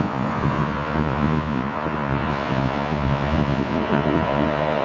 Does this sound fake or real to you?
fake